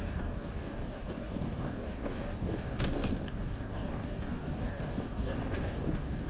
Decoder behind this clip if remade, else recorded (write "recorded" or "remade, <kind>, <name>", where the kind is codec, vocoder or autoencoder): remade, codec, DAC